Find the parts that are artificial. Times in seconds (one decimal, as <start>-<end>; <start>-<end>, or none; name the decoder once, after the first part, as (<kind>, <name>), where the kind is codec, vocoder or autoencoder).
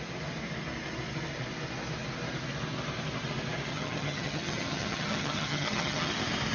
3.7-6.1 (vocoder, HiFi-GAN)